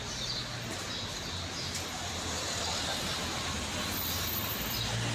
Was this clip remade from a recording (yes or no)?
no